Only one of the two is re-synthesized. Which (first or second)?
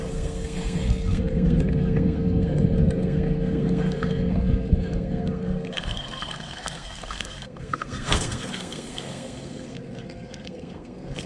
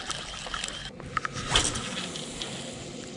first